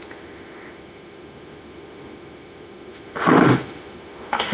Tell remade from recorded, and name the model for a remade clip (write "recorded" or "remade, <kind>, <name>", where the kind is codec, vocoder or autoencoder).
remade, autoencoder, DAC-VAE